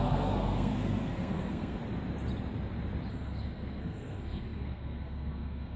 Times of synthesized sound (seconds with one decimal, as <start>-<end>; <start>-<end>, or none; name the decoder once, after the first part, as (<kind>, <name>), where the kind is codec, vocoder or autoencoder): 0.0-1.8 (codec, SNAC); 3.1-5.8